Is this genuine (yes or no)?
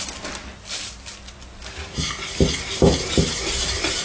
yes